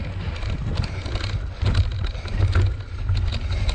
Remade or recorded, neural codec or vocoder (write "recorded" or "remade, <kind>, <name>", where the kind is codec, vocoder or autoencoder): recorded